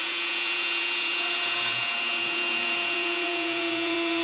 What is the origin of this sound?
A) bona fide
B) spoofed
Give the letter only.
B